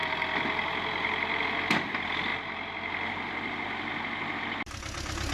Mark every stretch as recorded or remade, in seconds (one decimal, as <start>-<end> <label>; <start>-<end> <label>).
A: 0.0-5.3 recorded

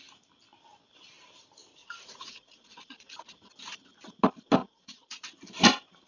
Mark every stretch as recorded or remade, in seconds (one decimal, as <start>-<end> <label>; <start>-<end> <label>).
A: 0.0-1.8 recorded; 1.8-3.5 remade; 3.5-4.6 recorded; 4.6-5.2 remade; 5.2-6.1 recorded

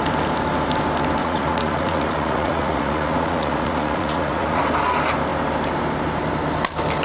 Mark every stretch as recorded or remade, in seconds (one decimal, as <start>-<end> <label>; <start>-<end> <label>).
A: 0.0-1.2 recorded; 1.2-4.6 remade; 4.6-7.0 recorded